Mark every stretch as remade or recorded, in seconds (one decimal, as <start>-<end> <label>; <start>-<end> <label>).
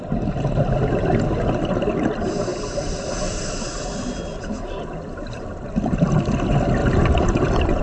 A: 0.0-7.8 recorded